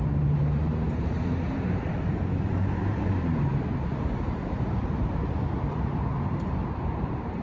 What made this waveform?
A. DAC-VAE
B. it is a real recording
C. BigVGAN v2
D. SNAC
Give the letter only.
C